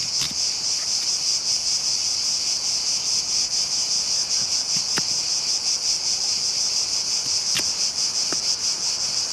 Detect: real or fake real